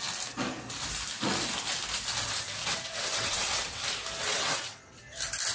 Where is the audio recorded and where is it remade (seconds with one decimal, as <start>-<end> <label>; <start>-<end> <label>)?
0.0-2.6 recorded; 2.6-3.8 remade; 3.8-4.3 recorded; 4.3-5.0 remade; 5.0-5.5 recorded